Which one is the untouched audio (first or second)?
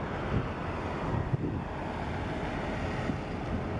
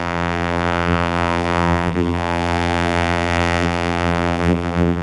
first